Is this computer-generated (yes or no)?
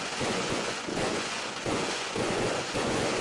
yes